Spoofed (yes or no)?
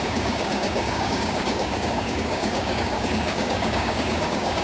yes